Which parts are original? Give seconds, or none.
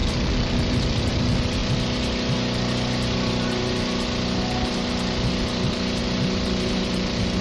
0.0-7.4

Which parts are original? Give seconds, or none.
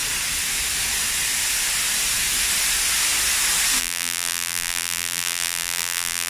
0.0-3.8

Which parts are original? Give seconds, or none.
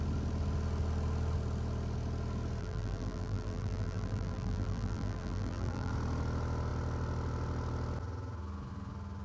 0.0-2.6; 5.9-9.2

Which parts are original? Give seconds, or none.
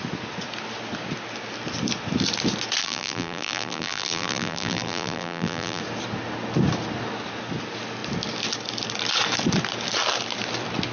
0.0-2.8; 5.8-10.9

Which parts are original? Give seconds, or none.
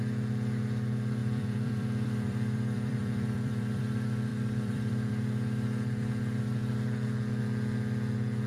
0.0-1.2; 3.8-4.3; 5.1-8.5